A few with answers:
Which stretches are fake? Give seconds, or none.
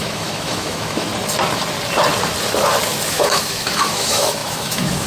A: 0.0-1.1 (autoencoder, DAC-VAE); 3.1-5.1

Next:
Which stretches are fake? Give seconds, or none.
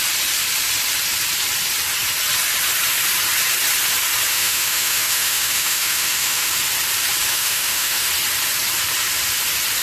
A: 4.3-6.5 (autoencoder, DAC-VAE); 7.3-8.1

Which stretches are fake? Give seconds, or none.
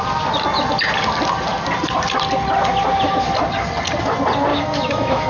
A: 4.5-5.3 (autoencoder, DAC-VAE)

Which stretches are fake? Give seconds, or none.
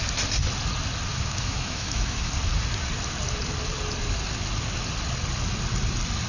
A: 1.1-2.3 (autoencoder, DAC-VAE)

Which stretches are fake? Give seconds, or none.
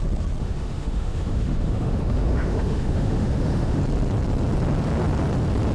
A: 0.4-3.8 (autoencoder, DAC-VAE)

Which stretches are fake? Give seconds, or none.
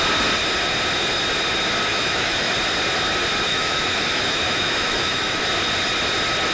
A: 1.9-2.5 (autoencoder, DAC-VAE); 3.5-5.4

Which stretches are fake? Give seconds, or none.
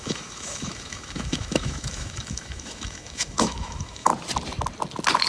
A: 0.0-4.1 (autoencoder, DAC-VAE)